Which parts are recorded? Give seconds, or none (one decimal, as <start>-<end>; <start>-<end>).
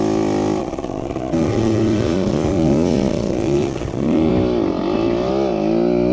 0.0-0.6; 4.3-6.1